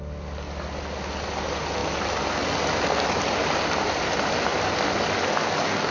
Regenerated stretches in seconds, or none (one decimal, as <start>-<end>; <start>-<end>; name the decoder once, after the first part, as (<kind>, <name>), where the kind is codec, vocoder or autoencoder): none